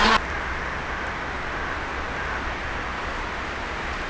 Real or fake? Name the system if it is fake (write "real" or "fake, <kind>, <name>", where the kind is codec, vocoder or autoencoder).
real